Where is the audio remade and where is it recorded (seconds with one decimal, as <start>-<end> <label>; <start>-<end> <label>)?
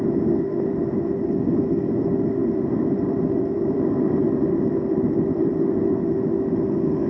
0.0-2.4 recorded; 2.4-5.6 remade; 5.6-7.1 recorded